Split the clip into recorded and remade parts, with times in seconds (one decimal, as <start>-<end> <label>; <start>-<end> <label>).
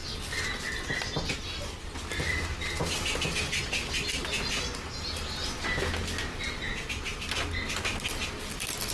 0.0-8.9 recorded